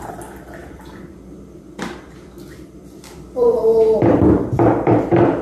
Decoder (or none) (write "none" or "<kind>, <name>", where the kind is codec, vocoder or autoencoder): vocoder, BigVGAN v2